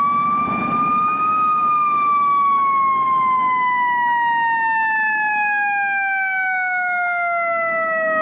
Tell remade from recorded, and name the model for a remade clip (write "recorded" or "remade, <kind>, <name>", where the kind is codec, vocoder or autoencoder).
recorded